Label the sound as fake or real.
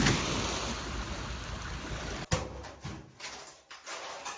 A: real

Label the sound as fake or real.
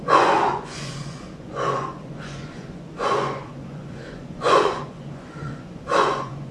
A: fake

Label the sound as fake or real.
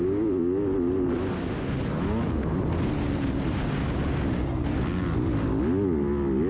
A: real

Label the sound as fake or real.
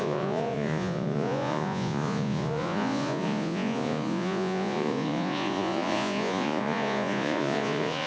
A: fake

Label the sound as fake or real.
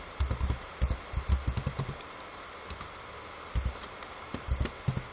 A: real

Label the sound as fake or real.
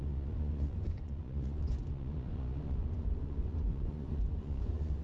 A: fake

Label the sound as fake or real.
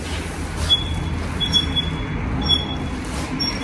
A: real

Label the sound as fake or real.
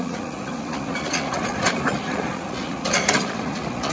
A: fake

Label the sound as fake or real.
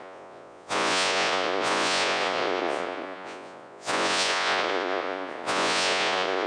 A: fake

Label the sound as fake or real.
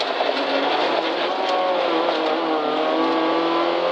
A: real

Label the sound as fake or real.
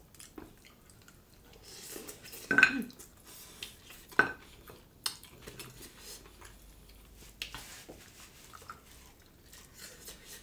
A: real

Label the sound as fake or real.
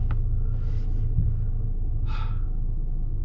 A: real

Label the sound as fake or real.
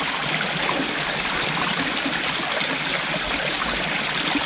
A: real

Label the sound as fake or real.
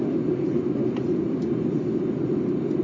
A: real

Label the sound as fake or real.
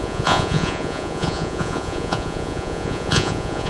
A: fake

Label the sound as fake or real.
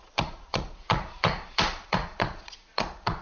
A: fake